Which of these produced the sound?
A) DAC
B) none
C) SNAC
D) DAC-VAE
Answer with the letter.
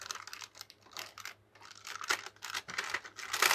B